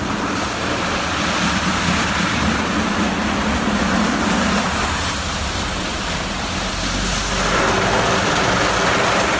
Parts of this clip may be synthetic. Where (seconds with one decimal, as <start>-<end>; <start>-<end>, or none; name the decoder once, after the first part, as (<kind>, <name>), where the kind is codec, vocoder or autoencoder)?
5.9-6.7 (vocoder, BigVGAN v2)